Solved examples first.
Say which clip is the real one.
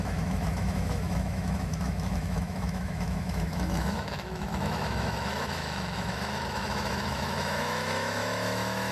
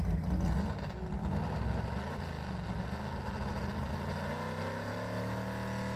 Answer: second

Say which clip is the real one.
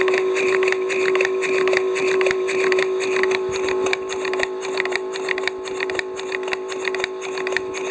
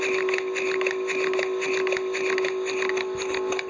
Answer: second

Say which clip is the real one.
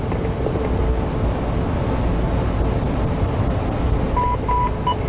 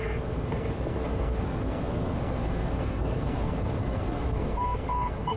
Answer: first